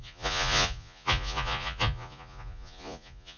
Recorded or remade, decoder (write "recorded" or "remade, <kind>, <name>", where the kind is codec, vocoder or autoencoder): remade, vocoder, Vocos